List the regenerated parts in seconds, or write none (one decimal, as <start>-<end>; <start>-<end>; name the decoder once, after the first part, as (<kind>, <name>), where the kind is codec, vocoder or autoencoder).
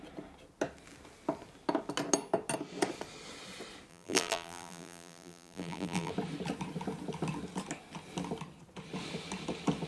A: 3.9-6.1 (vocoder, BigVGAN v2)